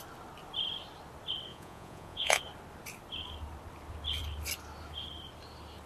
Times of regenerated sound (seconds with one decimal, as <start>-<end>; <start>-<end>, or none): 1.5-2.4